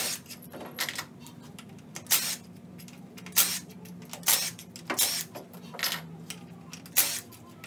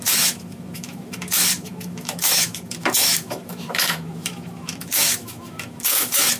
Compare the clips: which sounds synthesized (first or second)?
second